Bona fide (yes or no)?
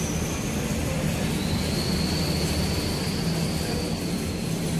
yes